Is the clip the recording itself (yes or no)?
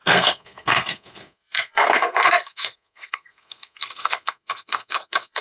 no